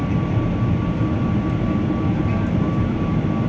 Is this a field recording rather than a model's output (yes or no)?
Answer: yes